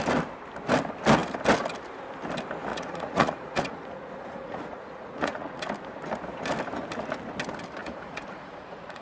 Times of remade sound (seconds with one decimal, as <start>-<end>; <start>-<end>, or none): 2.7-5.6; 7.8-9.0